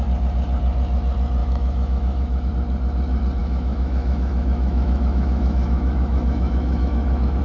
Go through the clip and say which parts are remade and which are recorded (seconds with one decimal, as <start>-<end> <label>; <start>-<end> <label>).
0.0-1.4 recorded; 1.4-2.5 remade; 2.5-3.4 recorded; 3.4-7.4 remade